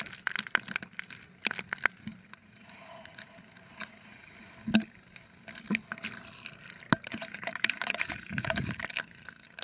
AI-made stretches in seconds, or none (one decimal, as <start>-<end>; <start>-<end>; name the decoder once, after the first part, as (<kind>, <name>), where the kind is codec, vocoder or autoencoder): 2.4-3.4 (vocoder, Vocos); 3.8-4.5; 7.1-8.8